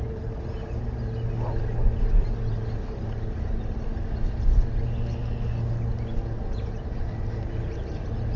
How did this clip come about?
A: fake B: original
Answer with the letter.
B